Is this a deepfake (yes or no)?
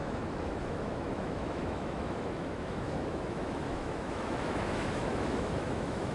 yes